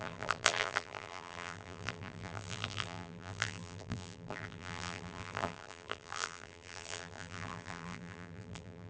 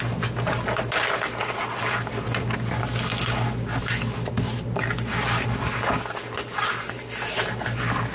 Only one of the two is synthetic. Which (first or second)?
first